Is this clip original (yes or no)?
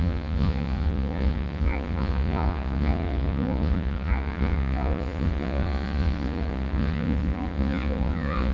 no